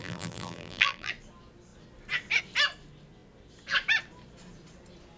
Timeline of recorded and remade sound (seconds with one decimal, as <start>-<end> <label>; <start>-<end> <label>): 0.0-1.1 remade; 1.1-5.2 recorded